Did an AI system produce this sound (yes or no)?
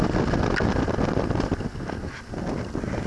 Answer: no